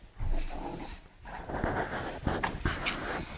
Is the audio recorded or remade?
recorded